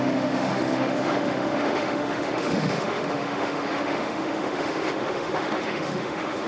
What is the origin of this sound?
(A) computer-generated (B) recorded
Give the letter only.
A